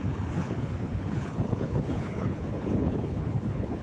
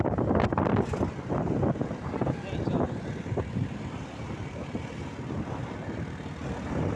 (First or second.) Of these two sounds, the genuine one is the second